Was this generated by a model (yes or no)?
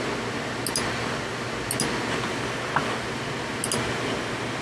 no